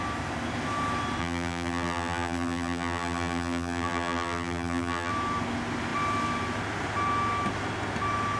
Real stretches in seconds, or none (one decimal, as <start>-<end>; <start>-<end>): 0.0-1.2; 5.1-8.4